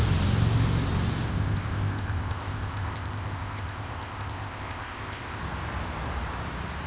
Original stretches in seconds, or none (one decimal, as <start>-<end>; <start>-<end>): 0.0-1.3; 5.4-6.9